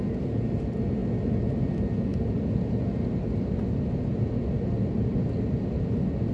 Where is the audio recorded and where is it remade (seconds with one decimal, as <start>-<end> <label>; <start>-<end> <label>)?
0.0-6.3 recorded